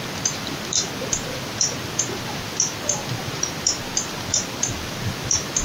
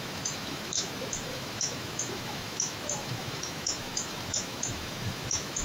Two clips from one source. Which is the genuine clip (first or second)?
first